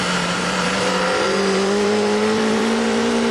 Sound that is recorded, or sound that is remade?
remade